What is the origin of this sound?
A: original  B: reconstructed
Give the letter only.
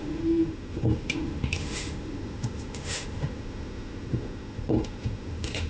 B